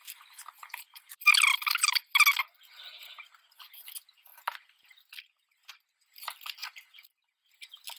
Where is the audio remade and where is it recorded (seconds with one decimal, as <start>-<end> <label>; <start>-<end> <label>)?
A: 0.0-8.0 recorded